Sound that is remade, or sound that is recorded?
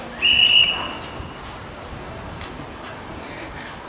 recorded